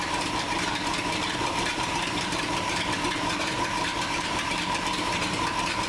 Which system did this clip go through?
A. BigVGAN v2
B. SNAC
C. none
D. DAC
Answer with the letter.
A